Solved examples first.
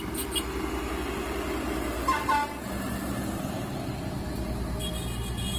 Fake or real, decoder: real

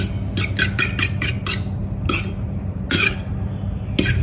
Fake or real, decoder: real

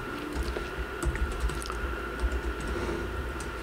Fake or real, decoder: real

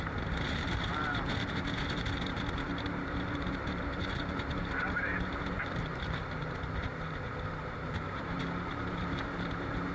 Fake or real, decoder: fake, vocoder, BigVGAN v2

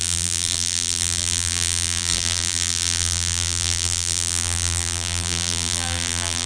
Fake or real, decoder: fake, vocoder, BigVGAN v2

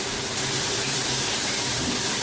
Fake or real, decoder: fake, vocoder, BigVGAN v2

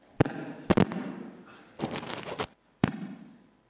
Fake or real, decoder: fake, vocoder, BigVGAN v2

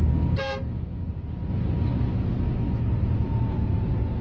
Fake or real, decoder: real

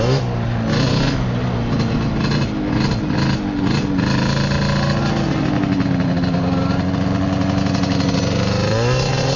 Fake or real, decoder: real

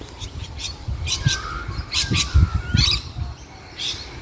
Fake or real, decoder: fake, vocoder, BigVGAN v2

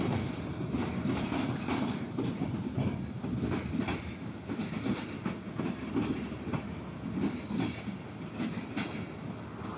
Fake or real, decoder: real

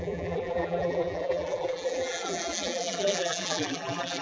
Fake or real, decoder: fake, vocoder, BigVGAN v2